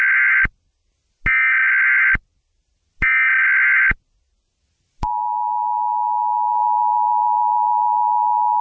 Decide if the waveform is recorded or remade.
recorded